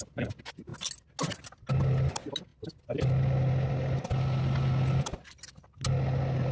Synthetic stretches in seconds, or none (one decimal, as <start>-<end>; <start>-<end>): none